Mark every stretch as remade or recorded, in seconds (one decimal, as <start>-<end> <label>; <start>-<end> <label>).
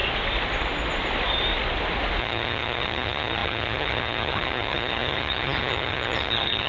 0.0-2.2 recorded; 2.2-6.7 remade